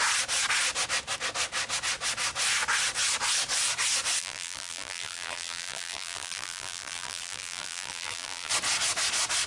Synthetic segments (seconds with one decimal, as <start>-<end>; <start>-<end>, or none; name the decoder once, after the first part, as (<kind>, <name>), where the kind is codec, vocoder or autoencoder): 4.2-8.5 (vocoder, BigVGAN v2)